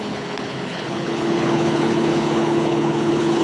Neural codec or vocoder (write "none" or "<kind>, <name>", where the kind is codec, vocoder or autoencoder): codec, HILCodec